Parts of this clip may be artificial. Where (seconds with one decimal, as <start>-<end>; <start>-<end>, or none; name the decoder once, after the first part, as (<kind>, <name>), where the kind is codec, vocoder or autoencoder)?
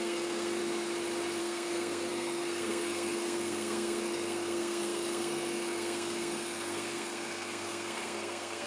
0.0-0.6 (codec, SNAC); 1.4-8.7